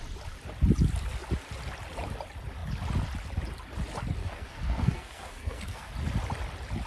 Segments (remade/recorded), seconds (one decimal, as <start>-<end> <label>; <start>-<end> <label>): 0.0-4.2 recorded; 4.2-5.9 remade; 5.9-6.9 recorded